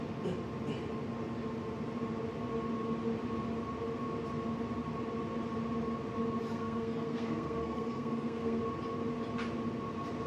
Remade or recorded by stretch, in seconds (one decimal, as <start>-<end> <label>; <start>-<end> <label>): 0.0-6.5 recorded; 6.5-8.6 remade; 8.6-10.3 recorded